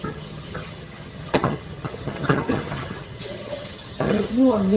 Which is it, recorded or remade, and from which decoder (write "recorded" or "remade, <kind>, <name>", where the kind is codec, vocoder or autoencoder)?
remade, vocoder, HiFi-GAN